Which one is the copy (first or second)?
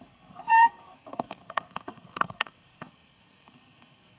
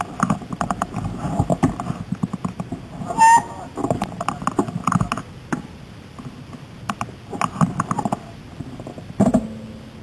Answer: first